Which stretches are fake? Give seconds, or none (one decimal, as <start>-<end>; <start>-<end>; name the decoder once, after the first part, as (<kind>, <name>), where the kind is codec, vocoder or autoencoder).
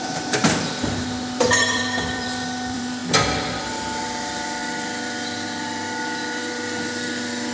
0.0-0.4 (vocoder, BigVGAN v2); 1.4-3.0; 3.6-7.5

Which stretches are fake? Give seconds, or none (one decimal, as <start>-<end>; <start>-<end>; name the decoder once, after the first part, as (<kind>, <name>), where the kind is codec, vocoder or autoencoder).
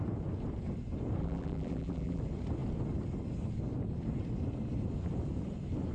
1.2-2.2 (vocoder, BigVGAN v2)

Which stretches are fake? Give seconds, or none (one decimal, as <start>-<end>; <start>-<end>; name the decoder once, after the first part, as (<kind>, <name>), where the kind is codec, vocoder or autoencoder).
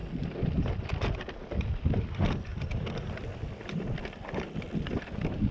2.5-3.0 (vocoder, BigVGAN v2)